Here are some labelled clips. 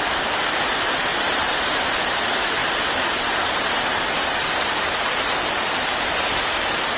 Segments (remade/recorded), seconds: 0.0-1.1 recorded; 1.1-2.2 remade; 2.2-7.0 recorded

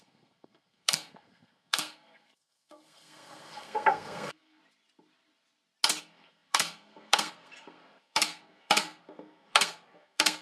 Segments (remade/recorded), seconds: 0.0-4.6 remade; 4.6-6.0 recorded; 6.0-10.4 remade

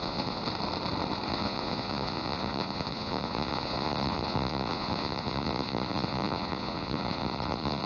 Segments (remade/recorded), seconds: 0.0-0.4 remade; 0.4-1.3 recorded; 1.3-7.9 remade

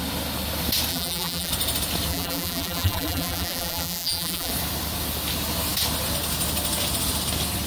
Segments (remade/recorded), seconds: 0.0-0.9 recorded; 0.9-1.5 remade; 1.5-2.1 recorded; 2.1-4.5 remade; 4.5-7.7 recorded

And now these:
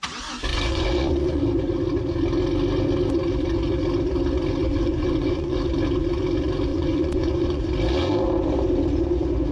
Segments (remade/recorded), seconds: 0.0-0.5 recorded; 0.5-1.4 remade; 1.4-4.6 recorded; 4.6-5.7 remade; 5.7-6.7 recorded; 6.7-7.6 remade; 7.6-9.5 recorded